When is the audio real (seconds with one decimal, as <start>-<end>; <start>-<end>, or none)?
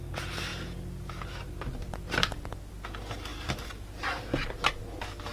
0.0-5.3